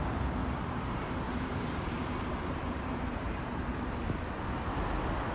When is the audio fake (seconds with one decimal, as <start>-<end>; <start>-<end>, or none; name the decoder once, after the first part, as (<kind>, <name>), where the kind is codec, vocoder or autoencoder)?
0.4-3.6 (vocoder, BigVGAN v2)